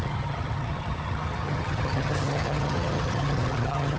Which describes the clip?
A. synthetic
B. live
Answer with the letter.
A